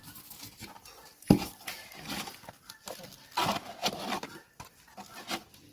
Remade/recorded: recorded